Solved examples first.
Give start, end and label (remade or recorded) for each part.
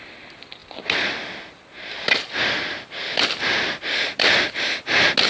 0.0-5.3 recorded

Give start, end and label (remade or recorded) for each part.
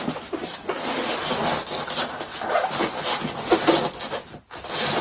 0.0-0.5 recorded; 0.5-2.7 remade; 2.7-5.0 recorded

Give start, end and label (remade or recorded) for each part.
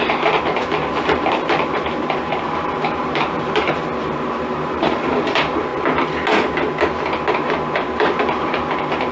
0.0-5.7 remade; 5.7-7.3 recorded; 7.3-9.1 remade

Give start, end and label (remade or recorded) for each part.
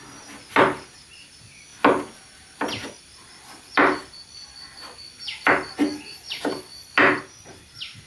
0.0-8.1 recorded